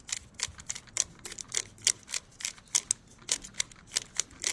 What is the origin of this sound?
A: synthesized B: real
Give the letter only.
B